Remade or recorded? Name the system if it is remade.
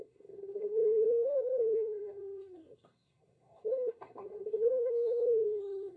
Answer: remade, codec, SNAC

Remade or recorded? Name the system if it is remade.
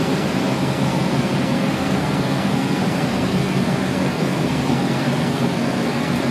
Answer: remade, codec, SNAC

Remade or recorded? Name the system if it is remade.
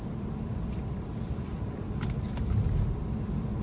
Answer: recorded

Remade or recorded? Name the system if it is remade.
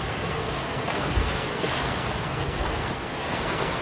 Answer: remade, codec, SNAC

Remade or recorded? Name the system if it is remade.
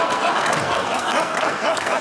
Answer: remade, codec, SNAC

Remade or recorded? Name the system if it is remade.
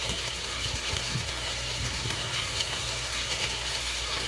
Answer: remade, codec, SNAC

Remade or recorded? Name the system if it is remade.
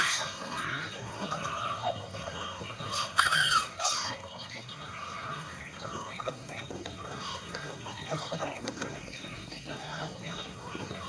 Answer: remade, codec, SNAC